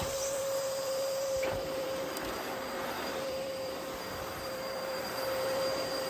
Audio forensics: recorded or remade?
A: remade